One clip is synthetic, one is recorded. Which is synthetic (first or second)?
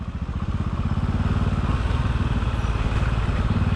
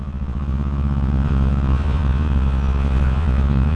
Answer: second